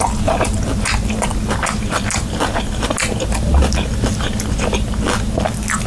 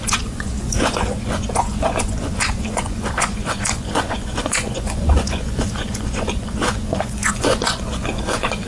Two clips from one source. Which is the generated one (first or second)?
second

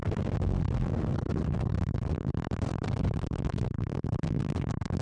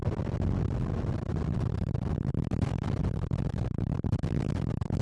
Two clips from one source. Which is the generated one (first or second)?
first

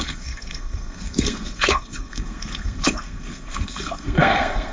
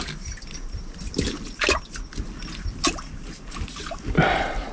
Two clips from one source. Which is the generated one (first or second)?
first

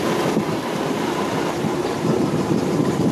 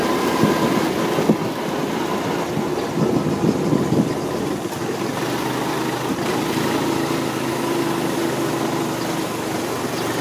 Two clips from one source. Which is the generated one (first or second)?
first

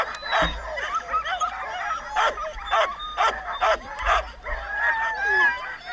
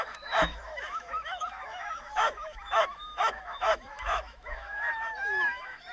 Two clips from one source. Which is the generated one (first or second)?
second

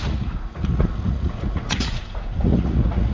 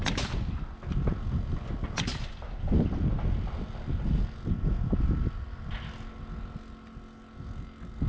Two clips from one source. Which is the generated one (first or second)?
first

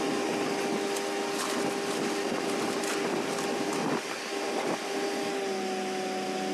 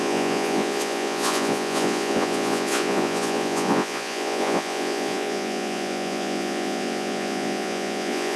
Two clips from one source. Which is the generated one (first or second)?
second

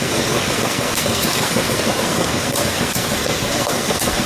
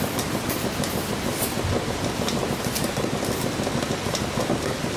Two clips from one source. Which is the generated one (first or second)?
first